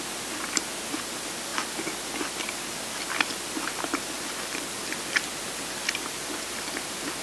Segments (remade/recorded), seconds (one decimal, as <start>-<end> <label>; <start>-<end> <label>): 0.0-7.2 recorded